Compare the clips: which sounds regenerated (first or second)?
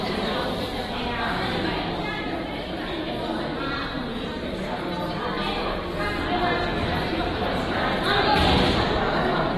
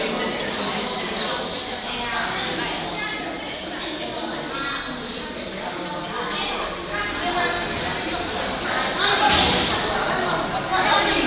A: first